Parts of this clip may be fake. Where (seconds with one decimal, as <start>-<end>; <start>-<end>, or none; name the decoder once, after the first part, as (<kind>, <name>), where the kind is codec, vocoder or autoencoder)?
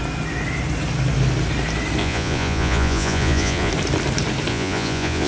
2.0-3.7 (vocoder, Vocos); 4.5-5.3